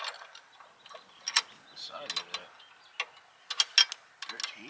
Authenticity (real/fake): real